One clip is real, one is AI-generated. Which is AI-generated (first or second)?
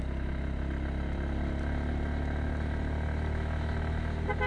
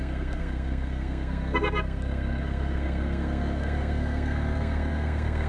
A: second